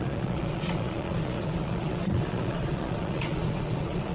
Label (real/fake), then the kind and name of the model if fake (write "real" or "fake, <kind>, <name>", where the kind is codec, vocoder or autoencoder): fake, vocoder, Vocos